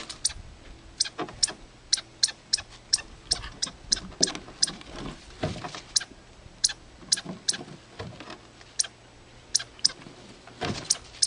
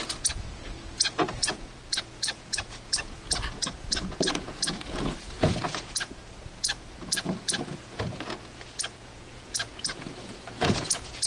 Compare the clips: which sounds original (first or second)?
first